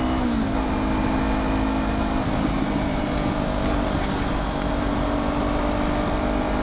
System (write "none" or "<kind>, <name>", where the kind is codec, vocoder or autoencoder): none